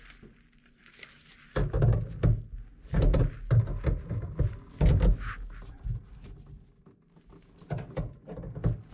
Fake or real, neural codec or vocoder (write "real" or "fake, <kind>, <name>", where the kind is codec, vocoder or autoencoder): real